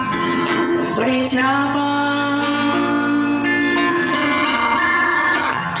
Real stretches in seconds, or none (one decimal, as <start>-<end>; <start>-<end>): 1.4-3.9